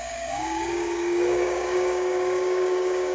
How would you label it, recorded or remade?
remade